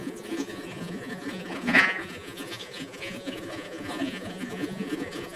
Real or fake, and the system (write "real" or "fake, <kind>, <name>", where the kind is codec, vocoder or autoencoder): fake, vocoder, Vocos